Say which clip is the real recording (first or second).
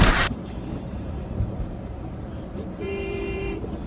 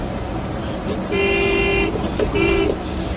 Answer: second